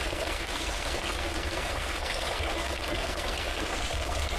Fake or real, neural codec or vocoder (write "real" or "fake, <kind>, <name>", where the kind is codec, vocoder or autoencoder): fake, codec, SNAC